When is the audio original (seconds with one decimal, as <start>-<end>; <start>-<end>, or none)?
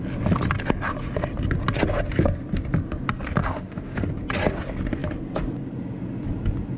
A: 0.0-3.4; 4.1-6.8